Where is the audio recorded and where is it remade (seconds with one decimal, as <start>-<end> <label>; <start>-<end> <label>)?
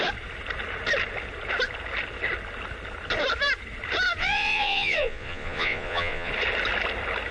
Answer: 0.0-4.2 recorded; 4.2-6.3 remade; 6.3-7.3 recorded